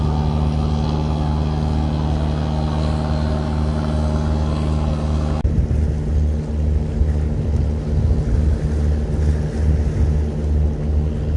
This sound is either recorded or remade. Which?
recorded